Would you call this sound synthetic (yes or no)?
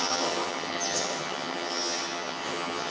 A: yes